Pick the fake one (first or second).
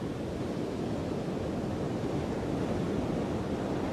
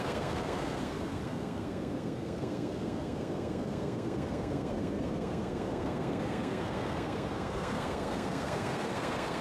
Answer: second